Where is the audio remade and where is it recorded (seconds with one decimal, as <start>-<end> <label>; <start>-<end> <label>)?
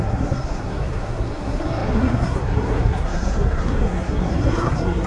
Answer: 0.0-5.1 remade